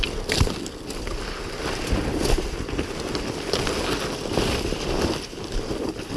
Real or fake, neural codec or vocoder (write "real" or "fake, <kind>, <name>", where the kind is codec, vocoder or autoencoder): real